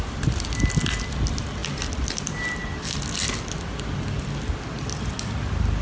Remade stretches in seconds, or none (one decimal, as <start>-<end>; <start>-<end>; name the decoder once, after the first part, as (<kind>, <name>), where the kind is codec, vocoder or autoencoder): none